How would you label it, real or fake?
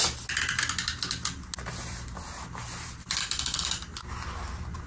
real